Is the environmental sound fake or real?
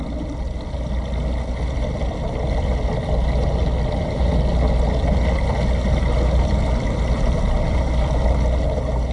real